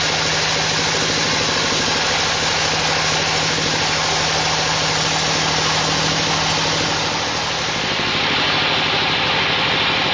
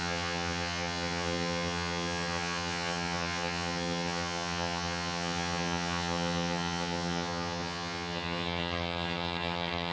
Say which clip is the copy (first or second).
second